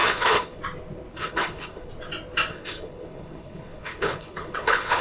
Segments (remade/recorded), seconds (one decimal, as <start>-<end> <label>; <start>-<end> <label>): 0.0-0.6 remade; 0.6-1.2 recorded; 1.2-1.9 remade; 1.9-2.5 recorded; 2.5-5.0 remade